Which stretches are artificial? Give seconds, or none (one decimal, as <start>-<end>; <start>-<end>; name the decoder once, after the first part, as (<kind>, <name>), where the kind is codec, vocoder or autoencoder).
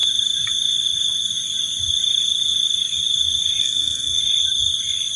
3.6-4.2 (codec, SNAC)